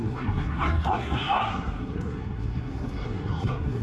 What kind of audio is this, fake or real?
fake